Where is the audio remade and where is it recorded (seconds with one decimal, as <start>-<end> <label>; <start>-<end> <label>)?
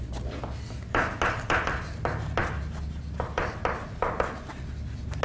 0.0-5.2 recorded